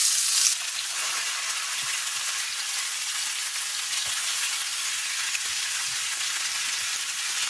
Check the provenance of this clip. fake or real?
real